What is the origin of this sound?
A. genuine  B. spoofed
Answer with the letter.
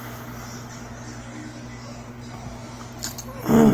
A